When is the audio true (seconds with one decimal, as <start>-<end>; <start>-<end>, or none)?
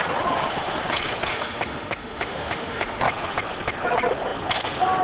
0.0-1.3; 3.0-5.0